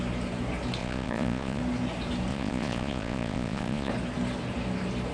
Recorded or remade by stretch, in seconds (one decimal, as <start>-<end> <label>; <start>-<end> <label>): 0.0-0.8 recorded; 0.8-1.6 remade; 1.6-2.3 recorded; 2.3-3.9 remade; 3.9-5.1 recorded